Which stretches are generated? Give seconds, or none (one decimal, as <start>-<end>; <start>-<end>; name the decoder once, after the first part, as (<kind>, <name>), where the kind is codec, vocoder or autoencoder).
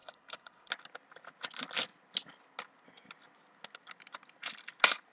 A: 0.0-0.7 (codec, HILCodec)